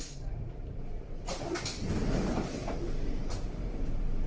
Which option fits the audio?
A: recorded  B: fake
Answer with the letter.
B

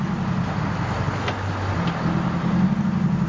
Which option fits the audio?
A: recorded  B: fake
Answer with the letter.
A